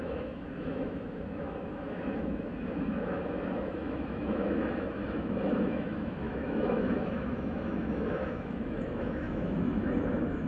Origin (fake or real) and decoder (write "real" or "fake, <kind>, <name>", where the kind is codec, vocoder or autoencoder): fake, autoencoder, DAC-VAE